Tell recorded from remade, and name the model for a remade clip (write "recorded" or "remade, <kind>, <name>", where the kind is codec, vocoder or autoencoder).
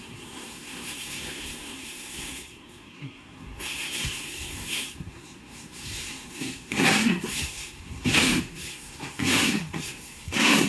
remade, codec, SNAC